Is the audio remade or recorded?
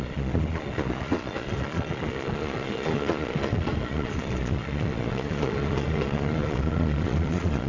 remade